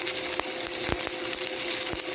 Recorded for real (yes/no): yes